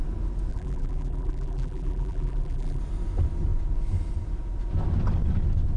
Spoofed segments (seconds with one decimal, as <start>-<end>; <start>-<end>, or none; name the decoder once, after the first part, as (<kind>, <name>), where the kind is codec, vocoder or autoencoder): 0.5-2.8 (vocoder, BigVGAN v2)